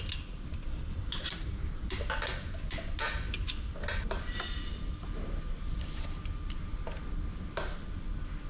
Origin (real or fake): real